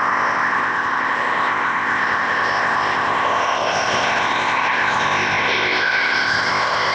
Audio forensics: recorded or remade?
remade